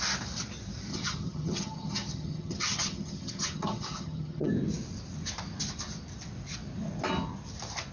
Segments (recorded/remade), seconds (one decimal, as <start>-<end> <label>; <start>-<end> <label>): 0.0-0.9 recorded; 0.9-4.5 remade; 4.5-7.9 recorded